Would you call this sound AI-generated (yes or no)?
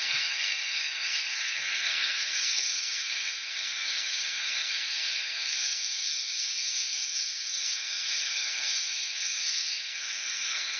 yes